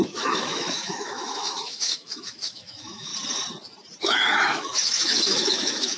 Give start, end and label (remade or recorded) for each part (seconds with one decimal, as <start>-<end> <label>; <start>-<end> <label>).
0.0-3.1 remade; 3.1-4.0 recorded; 4.0-6.0 remade